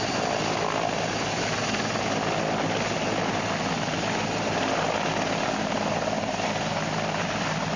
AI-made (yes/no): no